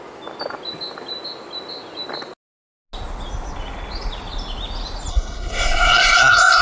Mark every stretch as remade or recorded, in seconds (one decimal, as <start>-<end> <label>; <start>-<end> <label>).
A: 0.0-5.1 recorded; 5.1-6.6 remade